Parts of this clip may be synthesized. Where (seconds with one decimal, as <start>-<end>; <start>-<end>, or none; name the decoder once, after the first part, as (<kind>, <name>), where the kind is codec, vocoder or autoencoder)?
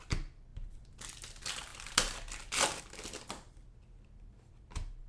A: none